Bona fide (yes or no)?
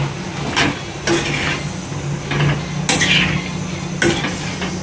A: yes